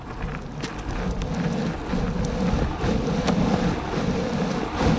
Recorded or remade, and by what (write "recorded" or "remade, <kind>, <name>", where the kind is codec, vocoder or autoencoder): recorded